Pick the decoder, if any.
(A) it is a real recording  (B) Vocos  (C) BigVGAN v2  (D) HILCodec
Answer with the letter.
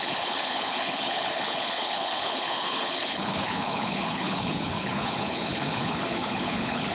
D